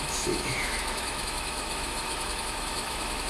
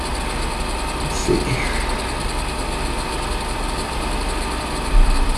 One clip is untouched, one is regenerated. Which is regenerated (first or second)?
first